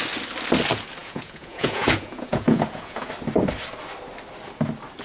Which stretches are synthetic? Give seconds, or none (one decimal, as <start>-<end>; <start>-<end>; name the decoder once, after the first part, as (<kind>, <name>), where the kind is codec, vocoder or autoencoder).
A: 1.0-3.1 (vocoder, Vocos)